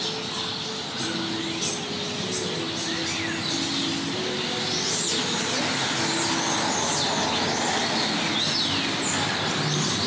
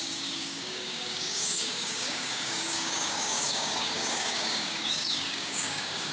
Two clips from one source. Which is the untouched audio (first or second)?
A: first